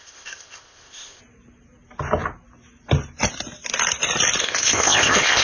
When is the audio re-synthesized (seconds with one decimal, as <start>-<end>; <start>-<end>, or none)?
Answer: 0.0-1.2; 4.4-5.4